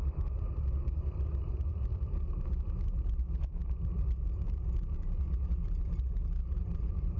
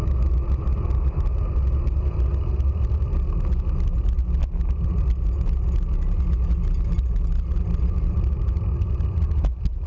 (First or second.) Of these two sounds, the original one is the second